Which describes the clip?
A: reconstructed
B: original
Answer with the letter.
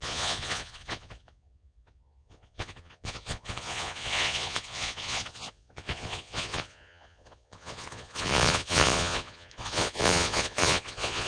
A